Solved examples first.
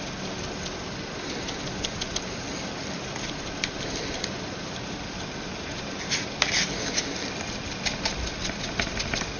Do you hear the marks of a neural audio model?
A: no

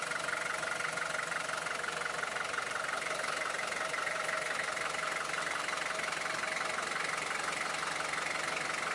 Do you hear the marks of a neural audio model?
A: no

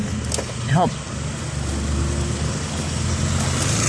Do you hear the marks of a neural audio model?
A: no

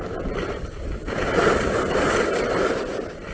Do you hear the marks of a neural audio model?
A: no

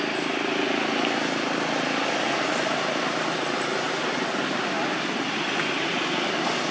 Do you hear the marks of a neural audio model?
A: no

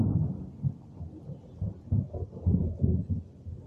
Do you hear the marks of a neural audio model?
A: no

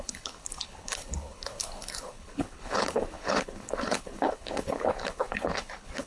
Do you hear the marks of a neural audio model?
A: yes